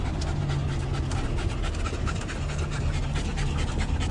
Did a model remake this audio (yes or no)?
no